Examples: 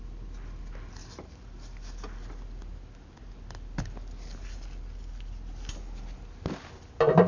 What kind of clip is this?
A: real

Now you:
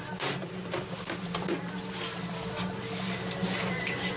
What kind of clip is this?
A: real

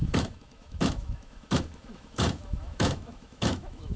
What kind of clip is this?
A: fake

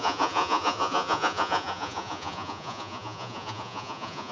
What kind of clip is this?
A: fake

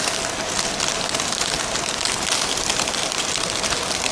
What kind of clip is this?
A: real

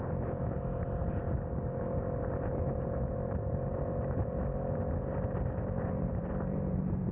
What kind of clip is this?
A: fake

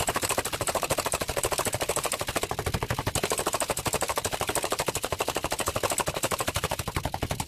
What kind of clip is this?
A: real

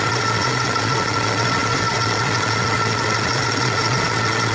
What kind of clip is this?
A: fake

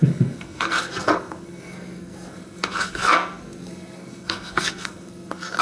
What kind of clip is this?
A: fake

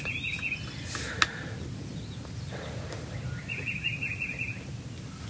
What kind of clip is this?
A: real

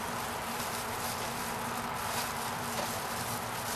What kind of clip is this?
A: real